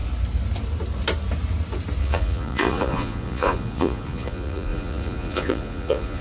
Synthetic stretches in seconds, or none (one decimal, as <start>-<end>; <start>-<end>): 2.0-6.2